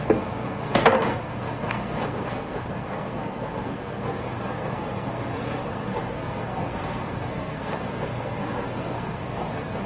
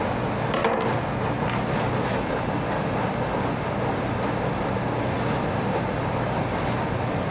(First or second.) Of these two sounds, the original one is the second